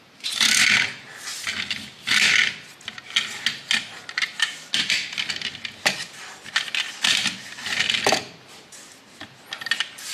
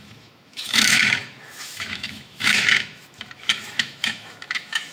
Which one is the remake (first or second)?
second